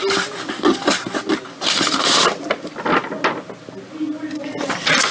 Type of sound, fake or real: real